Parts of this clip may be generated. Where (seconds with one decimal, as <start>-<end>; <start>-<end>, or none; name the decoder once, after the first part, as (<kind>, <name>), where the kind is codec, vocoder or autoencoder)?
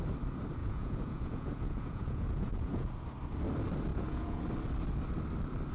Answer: 0.6-2.9 (vocoder, Vocos); 3.9-4.4